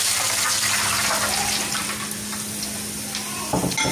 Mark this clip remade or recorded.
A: recorded